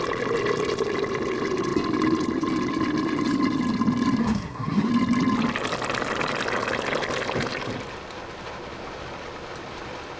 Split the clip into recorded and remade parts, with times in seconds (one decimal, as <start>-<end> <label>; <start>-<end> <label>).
0.0-4.2 recorded; 4.2-4.9 remade; 4.9-10.2 recorded